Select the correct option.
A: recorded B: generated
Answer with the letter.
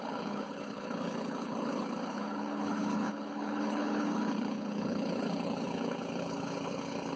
B